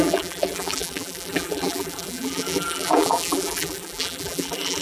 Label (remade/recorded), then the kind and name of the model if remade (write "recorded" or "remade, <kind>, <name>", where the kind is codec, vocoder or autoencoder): remade, vocoder, BigVGAN v2